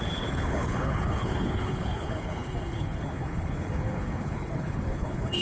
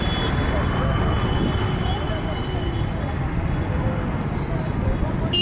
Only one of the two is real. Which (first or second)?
second